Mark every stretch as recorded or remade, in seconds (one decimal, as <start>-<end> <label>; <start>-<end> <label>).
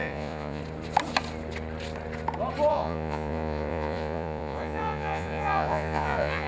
0.0-0.6 remade; 0.6-2.7 recorded; 2.7-6.5 remade